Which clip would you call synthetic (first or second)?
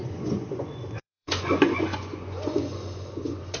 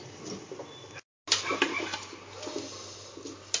first